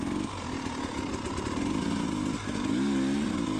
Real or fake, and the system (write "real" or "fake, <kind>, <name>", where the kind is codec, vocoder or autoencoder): real